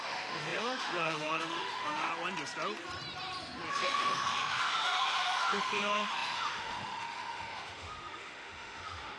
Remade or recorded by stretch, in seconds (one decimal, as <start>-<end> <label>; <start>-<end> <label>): 0.0-2.1 remade; 2.1-3.7 recorded; 3.7-9.2 remade